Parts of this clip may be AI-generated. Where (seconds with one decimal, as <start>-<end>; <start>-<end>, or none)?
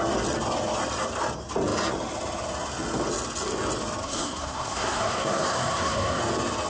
4.0-6.2